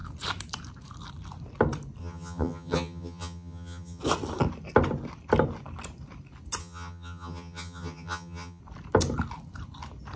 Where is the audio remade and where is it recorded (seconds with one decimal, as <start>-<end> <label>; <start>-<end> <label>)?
0.0-2.0 recorded; 2.0-4.0 remade; 4.0-6.6 recorded; 6.6-8.6 remade; 8.6-10.2 recorded